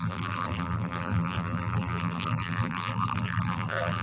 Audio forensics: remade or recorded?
remade